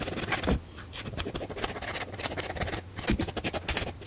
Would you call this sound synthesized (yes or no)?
no